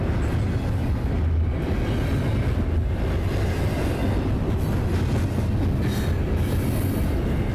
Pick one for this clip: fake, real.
real